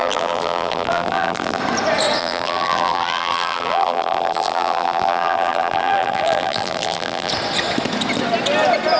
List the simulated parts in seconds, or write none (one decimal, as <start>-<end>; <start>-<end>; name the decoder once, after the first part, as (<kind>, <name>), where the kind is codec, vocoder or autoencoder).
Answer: 0.0-1.6 (vocoder, BigVGAN v2); 2.2-7.3